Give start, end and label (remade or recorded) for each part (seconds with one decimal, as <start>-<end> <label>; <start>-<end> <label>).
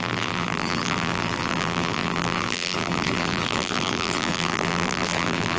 0.0-5.6 remade